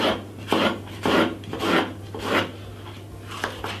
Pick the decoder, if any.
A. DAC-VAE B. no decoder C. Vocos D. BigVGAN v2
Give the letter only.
B